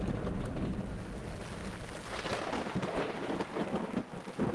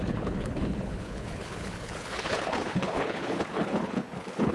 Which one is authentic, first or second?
first